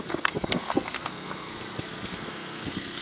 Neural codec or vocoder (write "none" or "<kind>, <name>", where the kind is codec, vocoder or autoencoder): codec, SNAC